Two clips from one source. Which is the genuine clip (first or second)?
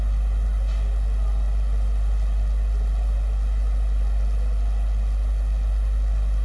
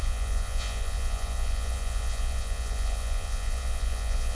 first